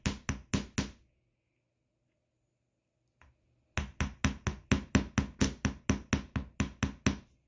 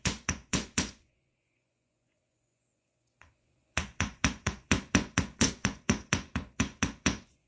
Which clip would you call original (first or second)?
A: first